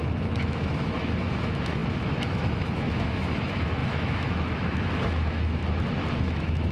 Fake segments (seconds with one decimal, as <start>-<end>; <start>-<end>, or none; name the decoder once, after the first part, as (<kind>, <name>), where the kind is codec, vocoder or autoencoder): 0.0-5.6 (autoencoder, DAC-VAE); 6.2-6.7